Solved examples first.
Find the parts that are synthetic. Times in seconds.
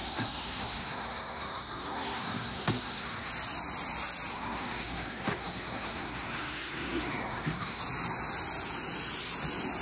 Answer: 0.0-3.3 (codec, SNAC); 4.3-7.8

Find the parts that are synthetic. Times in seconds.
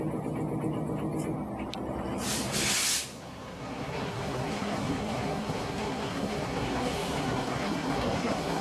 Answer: 3.1-8.6 (codec, SNAC)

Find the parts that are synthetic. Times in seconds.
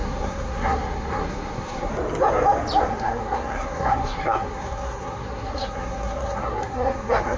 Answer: 0.0-1.9 (codec, SNAC); 2.9-7.4